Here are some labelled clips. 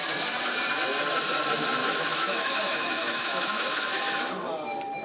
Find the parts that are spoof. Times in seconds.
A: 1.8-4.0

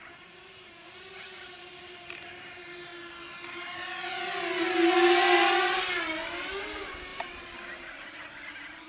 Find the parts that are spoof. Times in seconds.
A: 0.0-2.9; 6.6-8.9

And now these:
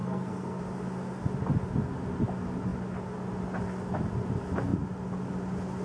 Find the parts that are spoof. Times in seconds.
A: 0.0-0.6

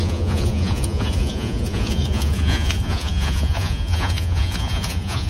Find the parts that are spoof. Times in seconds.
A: 0.0-5.3

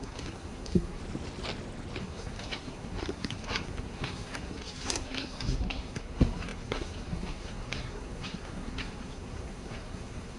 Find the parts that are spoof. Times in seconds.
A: 0.0-1.0; 2.0-10.4